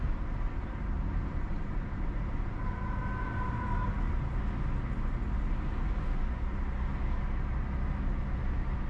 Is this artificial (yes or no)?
no